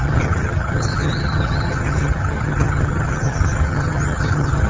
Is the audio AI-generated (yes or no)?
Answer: yes